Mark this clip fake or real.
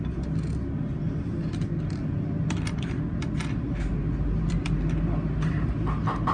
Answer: real